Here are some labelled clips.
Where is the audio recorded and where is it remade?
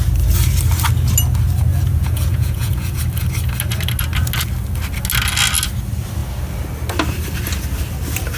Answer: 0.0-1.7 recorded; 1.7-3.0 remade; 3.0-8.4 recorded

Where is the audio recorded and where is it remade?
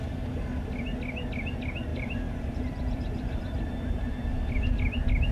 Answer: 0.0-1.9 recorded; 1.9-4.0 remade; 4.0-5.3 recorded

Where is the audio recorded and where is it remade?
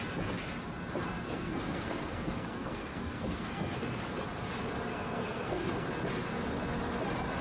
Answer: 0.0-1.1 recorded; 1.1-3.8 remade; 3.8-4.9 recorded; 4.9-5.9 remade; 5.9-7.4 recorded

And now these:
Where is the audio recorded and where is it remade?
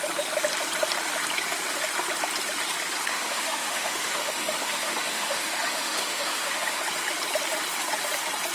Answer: 0.0-3.1 recorded; 3.1-6.8 remade; 6.8-8.5 recorded